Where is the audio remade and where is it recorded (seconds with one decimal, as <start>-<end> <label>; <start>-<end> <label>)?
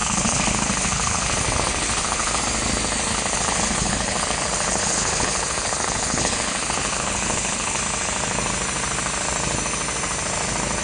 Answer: 0.0-2.4 remade; 2.4-3.1 recorded; 3.1-7.8 remade; 7.8-10.8 recorded